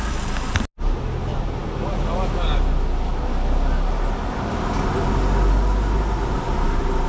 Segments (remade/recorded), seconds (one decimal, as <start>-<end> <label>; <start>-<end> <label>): 0.0-7.1 recorded